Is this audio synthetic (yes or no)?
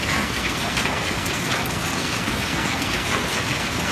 yes